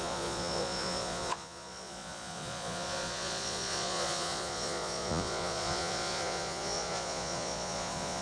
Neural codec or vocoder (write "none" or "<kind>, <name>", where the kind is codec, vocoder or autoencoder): vocoder, Vocos